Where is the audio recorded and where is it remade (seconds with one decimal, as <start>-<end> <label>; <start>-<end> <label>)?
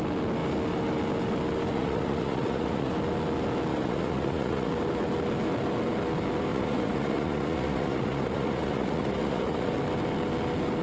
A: 0.0-1.7 recorded; 1.7-2.9 remade; 2.9-3.7 recorded; 3.7-4.7 remade; 4.7-6.5 recorded; 6.5-9.7 remade; 9.7-10.8 recorded